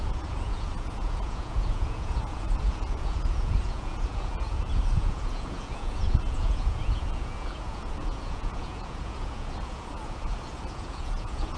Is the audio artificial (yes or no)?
yes